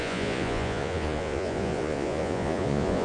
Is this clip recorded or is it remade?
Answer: remade